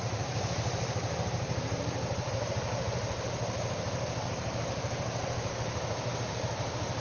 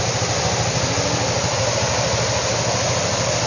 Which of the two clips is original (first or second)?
second